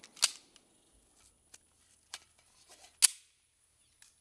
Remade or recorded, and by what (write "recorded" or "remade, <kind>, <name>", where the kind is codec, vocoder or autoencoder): recorded